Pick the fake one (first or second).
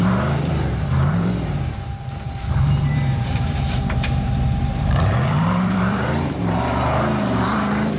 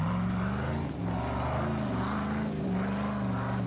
first